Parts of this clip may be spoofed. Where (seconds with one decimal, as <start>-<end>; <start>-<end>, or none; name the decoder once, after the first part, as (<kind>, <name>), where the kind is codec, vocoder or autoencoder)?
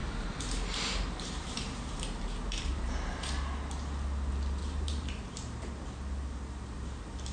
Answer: 0.0-3.5 (vocoder, BigVGAN v2); 4.6-5.7